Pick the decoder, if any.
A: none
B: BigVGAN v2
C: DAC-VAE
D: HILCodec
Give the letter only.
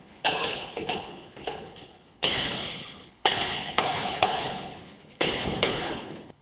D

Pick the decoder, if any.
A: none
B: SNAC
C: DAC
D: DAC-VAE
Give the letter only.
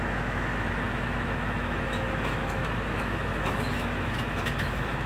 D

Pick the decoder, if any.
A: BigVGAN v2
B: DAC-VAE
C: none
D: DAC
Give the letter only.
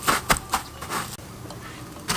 C